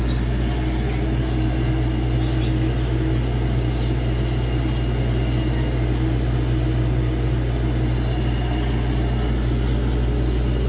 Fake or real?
real